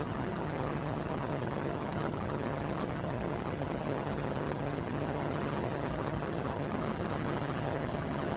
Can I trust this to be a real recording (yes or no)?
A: no